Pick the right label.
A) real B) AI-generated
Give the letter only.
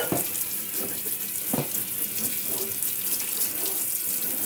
A